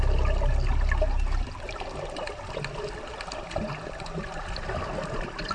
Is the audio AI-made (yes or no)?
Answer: no